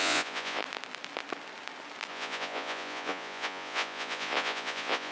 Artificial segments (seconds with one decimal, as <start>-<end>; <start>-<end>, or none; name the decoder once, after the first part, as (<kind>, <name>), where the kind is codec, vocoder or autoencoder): 0.0-0.6 (vocoder, Vocos); 2.1-5.1